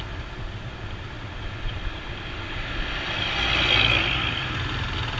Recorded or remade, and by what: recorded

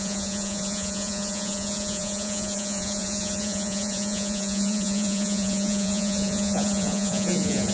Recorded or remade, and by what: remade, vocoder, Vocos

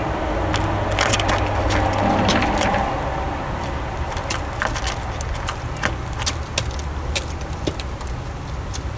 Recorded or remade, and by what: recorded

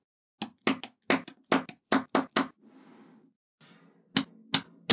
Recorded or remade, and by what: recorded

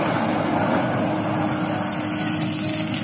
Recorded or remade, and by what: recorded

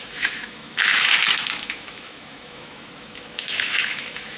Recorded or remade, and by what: remade, autoencoder, DAC-VAE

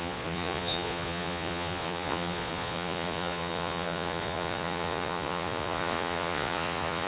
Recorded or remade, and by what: remade, vocoder, Vocos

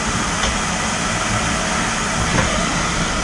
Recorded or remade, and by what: remade, vocoder, BigVGAN v2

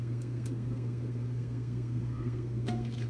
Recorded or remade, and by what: remade, codec, SNAC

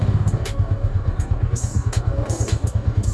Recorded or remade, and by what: remade, codec, DAC